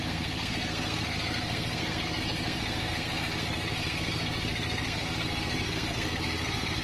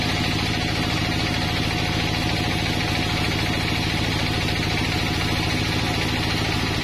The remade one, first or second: first